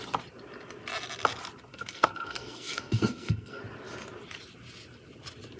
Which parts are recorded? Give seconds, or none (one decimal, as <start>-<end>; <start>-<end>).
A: 0.0-1.7; 3.6-5.6